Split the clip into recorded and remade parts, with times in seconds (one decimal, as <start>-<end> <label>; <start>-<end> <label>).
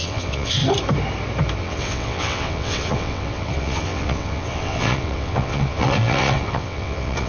0.0-0.6 remade; 0.6-1.6 recorded; 1.6-7.3 remade